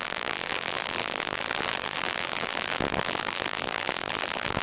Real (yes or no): no